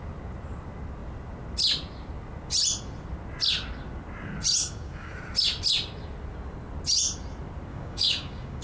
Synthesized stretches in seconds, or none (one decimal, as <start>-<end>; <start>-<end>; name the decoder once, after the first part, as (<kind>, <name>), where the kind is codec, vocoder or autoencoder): 4.6-5.1 (codec, DAC); 7.7-8.6